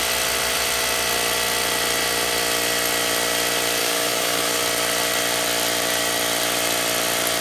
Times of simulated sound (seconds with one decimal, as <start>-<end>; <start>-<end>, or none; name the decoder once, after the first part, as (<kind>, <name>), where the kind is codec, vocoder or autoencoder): 3.8-4.6 (codec, DAC)